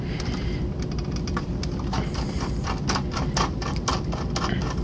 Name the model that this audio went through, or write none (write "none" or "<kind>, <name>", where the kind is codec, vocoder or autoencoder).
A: none